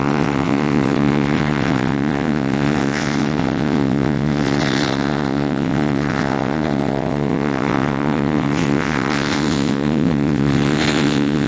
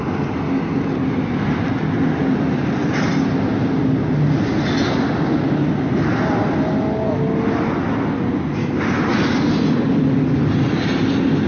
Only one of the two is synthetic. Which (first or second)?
first